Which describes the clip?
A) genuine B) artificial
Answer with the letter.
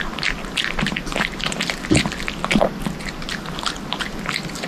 A